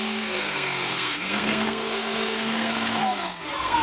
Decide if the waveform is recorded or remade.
remade